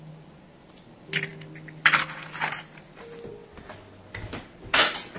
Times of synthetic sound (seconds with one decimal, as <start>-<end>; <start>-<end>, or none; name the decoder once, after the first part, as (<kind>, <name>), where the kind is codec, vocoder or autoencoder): none